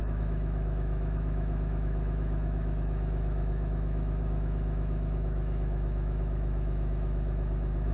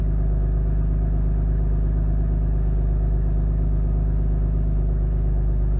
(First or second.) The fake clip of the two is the first